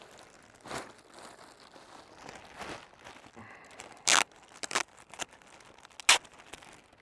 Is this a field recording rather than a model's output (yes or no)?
yes